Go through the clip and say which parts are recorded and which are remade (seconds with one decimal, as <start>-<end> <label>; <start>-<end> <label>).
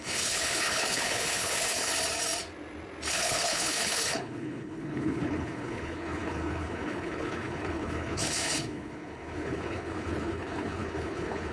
0.0-1.9 remade; 1.9-3.1 recorded; 3.1-11.5 remade